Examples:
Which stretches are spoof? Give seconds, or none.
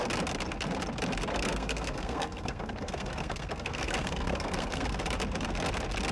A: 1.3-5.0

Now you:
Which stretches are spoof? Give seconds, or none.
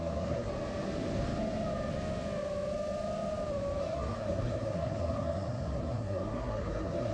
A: 0.0-0.5; 3.8-7.1